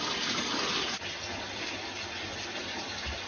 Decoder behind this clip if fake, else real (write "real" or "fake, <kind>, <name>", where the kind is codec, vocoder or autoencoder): real